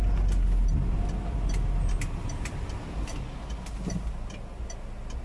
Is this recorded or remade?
recorded